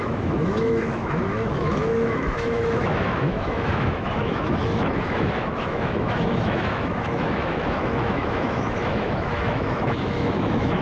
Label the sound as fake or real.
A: fake